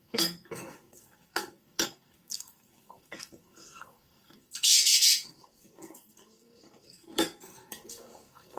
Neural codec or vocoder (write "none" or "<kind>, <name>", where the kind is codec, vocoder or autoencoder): codec, SNAC